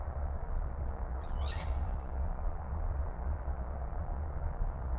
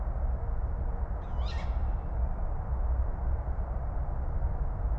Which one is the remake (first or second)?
first